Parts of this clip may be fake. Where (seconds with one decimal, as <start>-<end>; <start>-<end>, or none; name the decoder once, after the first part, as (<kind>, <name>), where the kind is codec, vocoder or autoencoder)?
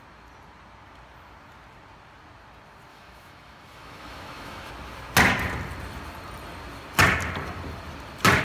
2.9-4.7 (autoencoder, DAC-VAE)